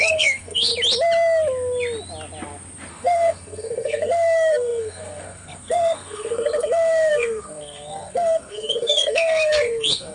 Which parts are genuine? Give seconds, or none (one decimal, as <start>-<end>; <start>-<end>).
0.7-2.9